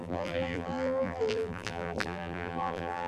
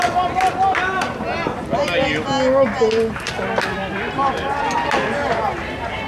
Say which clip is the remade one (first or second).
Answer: first